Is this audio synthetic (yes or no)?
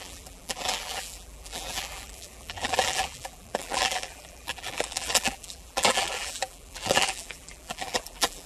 yes